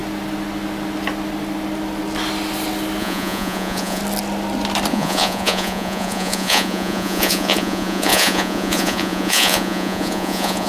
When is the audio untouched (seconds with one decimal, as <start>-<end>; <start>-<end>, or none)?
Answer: 0.0-3.0; 4.0-4.9